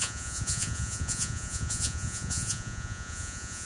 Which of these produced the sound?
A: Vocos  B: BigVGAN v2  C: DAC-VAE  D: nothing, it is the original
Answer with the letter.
A